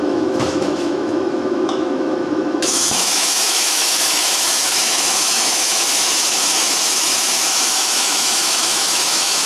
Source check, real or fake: fake